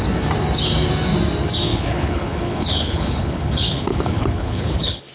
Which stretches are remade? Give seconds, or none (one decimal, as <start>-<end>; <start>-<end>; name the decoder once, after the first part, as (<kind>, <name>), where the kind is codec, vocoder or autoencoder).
1.7-5.1 (codec, HILCodec)